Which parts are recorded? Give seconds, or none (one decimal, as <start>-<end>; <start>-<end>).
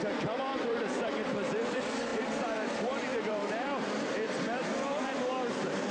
none